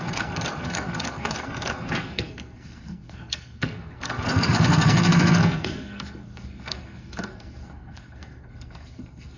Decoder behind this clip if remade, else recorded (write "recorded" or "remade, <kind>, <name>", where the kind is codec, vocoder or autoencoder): remade, codec, SNAC